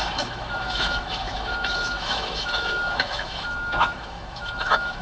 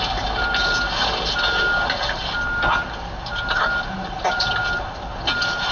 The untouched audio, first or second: second